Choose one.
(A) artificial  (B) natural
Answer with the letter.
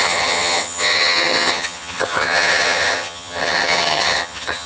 A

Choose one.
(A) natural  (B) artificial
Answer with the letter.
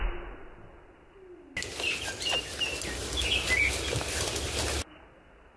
A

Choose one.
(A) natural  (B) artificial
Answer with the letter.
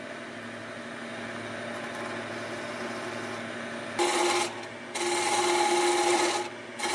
A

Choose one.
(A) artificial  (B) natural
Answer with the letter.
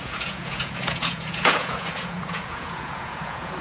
A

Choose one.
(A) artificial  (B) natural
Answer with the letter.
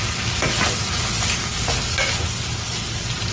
B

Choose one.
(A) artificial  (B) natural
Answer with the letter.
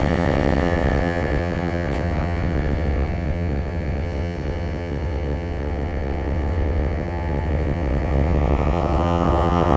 A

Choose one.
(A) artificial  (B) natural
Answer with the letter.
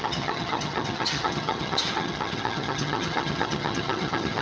A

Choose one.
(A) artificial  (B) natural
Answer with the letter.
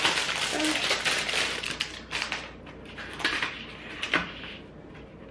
A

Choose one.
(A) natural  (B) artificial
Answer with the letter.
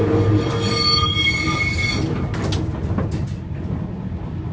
A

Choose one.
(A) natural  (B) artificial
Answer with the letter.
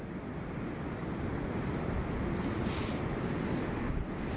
A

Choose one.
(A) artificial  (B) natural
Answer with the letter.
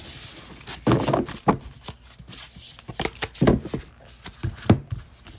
B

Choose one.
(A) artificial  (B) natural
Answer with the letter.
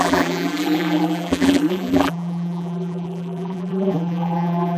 A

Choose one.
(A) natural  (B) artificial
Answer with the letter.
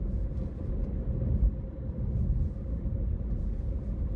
A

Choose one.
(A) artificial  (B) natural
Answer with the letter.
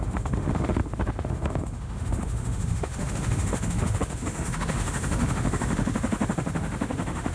A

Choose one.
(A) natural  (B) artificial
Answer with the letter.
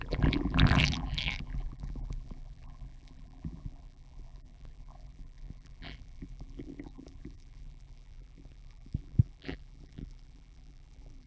B